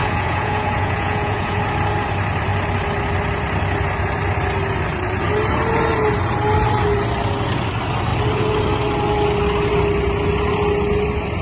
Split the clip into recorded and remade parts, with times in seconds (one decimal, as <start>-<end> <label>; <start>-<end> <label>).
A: 0.0-1.6 remade; 1.6-11.4 recorded